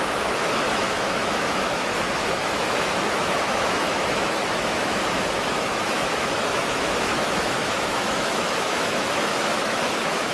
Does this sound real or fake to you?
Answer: fake